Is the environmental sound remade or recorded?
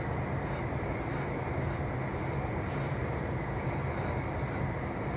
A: recorded